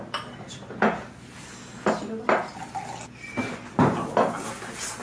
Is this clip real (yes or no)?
yes